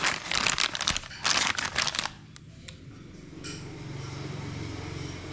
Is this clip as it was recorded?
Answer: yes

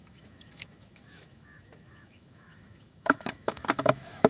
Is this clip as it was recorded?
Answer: no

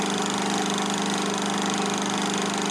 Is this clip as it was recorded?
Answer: yes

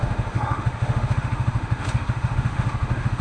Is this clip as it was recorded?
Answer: no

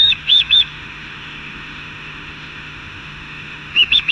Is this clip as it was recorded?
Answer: no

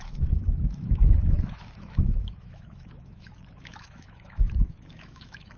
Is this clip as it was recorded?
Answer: no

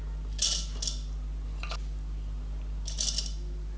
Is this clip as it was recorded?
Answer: yes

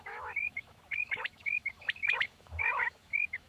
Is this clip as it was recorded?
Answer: no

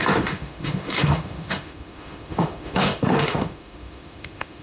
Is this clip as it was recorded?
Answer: no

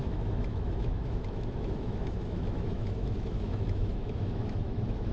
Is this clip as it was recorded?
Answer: no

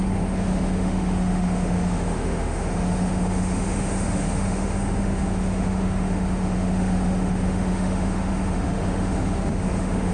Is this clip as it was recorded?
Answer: no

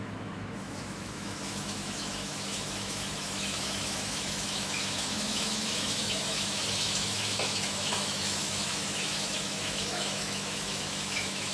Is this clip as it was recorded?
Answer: no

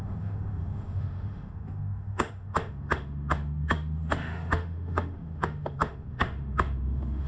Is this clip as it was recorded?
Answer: no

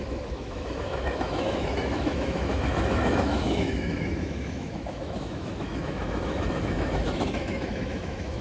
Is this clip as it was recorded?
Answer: no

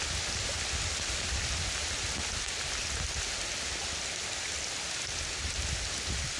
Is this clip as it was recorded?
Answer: yes